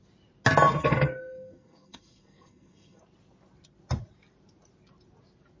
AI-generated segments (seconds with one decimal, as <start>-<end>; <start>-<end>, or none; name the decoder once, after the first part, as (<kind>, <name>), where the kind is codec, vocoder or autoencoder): 0.8-3.0 (codec, SNAC)